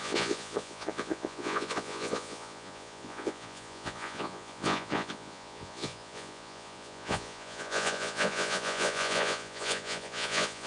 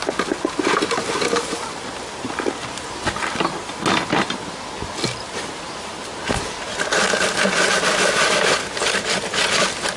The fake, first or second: first